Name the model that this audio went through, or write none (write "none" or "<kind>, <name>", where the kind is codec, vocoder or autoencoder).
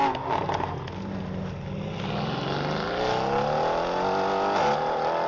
none